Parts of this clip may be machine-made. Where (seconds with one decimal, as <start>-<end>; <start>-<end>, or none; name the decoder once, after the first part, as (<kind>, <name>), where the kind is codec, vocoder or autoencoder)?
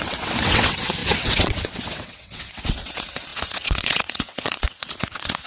0.0-5.5 (vocoder, WaveNeXt)